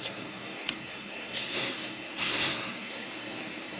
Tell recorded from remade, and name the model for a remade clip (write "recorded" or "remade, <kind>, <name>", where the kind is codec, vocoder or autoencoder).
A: remade, codec, SNAC